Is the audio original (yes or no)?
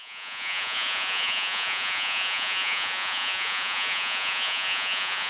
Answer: no